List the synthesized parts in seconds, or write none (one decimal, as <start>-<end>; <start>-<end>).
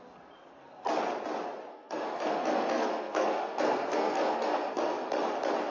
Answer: 1.7-5.1